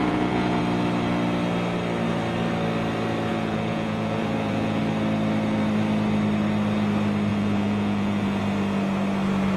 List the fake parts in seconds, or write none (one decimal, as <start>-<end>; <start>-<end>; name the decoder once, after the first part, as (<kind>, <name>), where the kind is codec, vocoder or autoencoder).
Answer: 0.0-0.6 (vocoder, Vocos); 3.3-4.8; 7.3-8.4